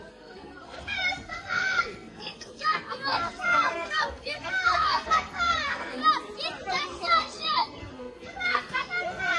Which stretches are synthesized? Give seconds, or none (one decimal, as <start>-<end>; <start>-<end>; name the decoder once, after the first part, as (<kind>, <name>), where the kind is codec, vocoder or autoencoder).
0.0-6.0 (codec, SNAC); 6.7-9.4